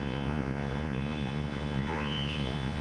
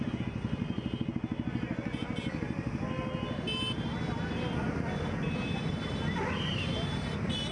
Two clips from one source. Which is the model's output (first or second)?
first